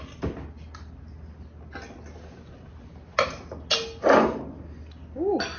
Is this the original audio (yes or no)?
yes